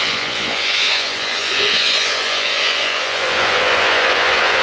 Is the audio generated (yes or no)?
yes